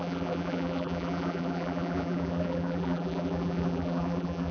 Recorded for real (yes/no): no